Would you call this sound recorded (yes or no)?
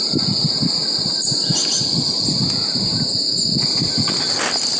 yes